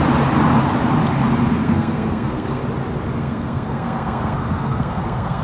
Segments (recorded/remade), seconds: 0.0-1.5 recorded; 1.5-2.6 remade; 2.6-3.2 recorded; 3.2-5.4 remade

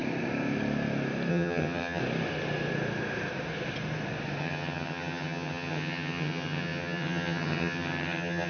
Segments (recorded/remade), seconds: 0.0-1.3 recorded; 1.3-2.0 remade; 2.0-4.4 recorded; 4.4-8.5 remade

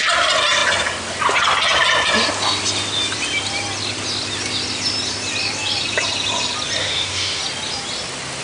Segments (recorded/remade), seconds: 0.0-6.8 recorded; 6.8-7.4 remade; 7.4-8.4 recorded

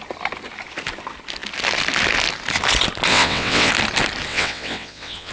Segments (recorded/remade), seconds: 0.0-3.1 recorded; 3.1-3.7 remade; 3.7-4.3 recorded; 4.3-5.3 remade

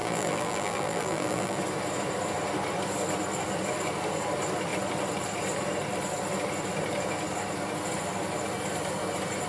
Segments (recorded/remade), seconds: 0.0-1.6 remade; 1.6-9.5 recorded

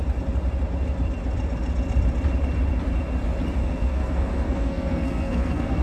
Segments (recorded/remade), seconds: 0.0-3.6 recorded; 3.6-5.8 remade

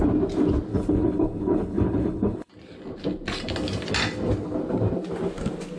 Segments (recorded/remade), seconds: 0.0-0.7 recorded; 0.7-2.5 remade; 2.5-5.8 recorded